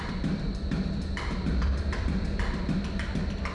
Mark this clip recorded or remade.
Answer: recorded